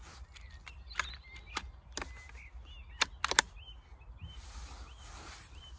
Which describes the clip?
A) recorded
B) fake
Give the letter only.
A